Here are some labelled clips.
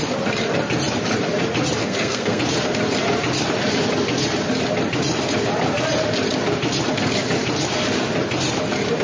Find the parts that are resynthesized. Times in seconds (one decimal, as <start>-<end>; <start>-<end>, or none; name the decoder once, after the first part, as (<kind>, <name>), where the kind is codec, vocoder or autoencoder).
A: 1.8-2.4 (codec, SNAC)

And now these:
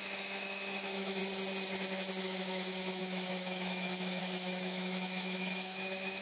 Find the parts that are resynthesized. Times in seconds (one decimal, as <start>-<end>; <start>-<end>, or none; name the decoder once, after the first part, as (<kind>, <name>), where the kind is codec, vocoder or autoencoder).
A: 0.0-1.2 (autoencoder, DAC-VAE); 2.2-6.2

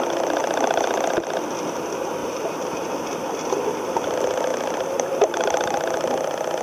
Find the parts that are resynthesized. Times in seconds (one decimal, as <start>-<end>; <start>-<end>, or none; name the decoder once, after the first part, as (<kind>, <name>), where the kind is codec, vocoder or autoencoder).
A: 0.4-1.1 (vocoder, BigVGAN v2); 2.2-3.0; 4.5-6.1